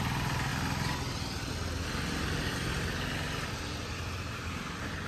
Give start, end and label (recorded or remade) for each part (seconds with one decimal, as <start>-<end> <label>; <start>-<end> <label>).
0.0-5.1 recorded